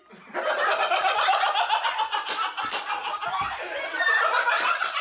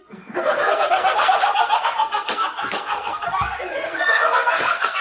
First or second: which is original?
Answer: first